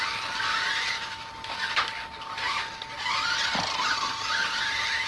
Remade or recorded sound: recorded